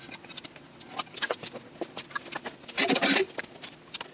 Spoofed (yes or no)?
no